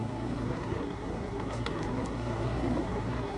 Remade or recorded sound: remade